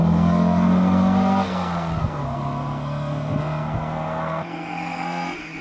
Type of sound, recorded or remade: remade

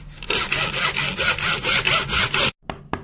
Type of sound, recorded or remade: recorded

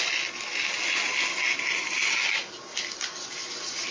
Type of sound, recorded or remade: recorded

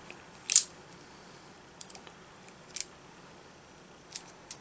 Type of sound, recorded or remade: recorded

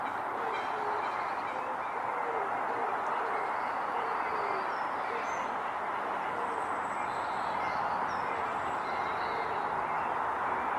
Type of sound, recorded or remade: recorded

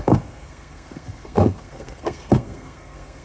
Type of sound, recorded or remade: remade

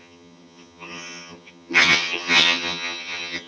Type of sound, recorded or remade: remade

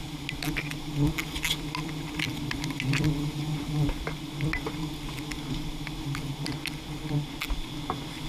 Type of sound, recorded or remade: recorded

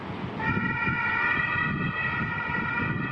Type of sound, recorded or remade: recorded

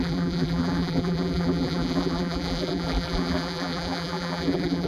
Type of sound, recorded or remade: remade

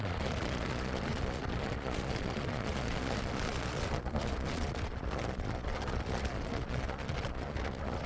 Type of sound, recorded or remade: remade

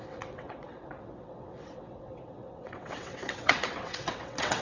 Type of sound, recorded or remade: remade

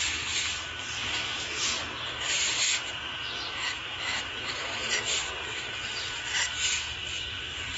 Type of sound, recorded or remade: recorded